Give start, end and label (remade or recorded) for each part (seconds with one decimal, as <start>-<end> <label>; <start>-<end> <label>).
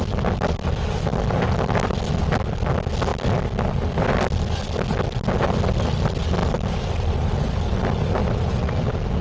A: 0.0-9.2 recorded